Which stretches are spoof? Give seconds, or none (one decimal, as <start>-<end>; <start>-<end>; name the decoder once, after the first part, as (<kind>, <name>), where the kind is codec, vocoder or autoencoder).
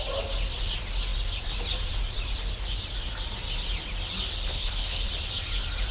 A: 4.5-5.1 (codec, HILCodec)